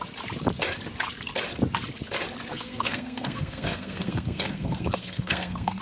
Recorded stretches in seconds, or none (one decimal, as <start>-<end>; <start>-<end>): 0.0-2.5